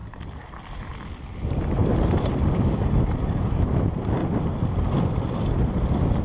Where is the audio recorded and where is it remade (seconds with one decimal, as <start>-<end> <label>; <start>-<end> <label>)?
0.0-4.2 remade; 4.2-5.0 recorded; 5.0-6.2 remade